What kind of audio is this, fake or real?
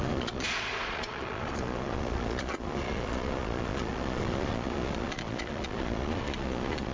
fake